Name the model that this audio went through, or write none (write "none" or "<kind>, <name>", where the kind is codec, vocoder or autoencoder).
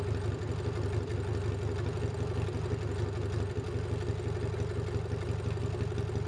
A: none